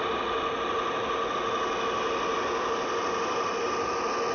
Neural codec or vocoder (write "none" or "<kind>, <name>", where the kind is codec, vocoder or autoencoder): none